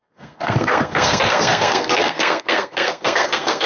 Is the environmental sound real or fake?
fake